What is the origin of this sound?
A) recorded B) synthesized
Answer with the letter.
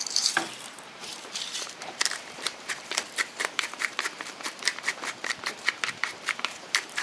B